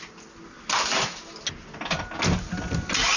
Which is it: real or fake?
real